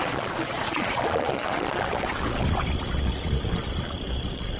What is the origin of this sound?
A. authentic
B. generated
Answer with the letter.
B